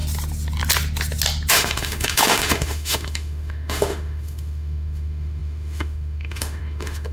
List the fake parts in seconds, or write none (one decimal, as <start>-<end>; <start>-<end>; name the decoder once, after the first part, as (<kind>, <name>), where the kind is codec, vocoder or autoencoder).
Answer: 1.5-7.1 (autoencoder, DAC-VAE)